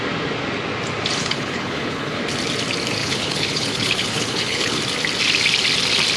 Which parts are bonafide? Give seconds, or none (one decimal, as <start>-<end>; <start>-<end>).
0.0-1.2; 2.2-3.0; 4.8-6.2